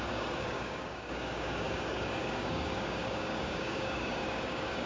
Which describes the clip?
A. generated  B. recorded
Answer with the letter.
A